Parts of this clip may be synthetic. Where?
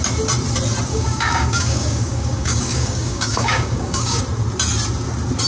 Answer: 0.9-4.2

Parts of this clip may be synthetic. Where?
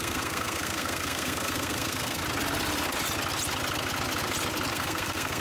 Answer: 0.0-2.2; 4.7-5.4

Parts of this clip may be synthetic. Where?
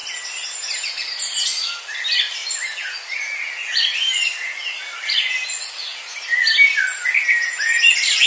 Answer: none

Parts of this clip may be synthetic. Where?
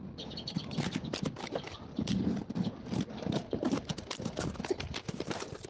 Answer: none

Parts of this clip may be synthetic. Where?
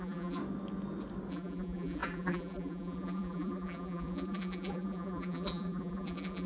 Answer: 0.0-0.4; 1.3-6.5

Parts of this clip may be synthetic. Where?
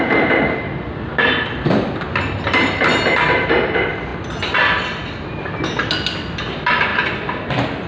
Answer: none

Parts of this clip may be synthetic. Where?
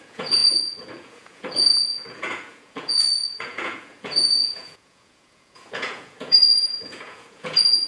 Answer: 0.0-7.9